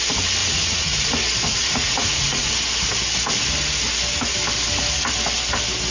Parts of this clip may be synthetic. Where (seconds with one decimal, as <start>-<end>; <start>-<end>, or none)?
0.4-1.1; 1.5-2.5